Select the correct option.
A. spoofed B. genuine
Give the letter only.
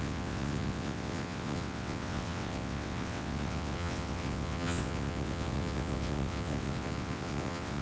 A